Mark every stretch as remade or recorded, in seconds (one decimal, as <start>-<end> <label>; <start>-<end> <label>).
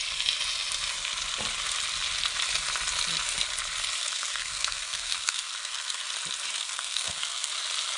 0.0-4.0 recorded; 4.0-6.1 remade; 6.1-6.6 recorded; 6.6-7.5 remade; 7.5-8.0 recorded